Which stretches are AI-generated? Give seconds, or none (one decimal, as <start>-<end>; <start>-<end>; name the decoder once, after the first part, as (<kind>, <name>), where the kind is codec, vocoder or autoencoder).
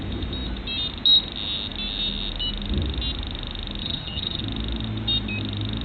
3.8-4.4 (vocoder, HiFi-GAN)